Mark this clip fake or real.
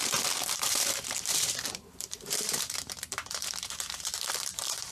fake